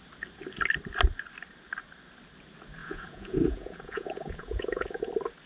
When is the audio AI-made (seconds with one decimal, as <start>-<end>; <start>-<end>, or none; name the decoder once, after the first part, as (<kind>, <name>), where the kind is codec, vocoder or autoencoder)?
2.8-5.1 (vocoder, Vocos)